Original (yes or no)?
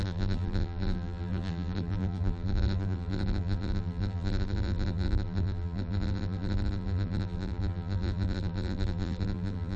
no